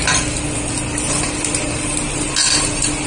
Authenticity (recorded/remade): recorded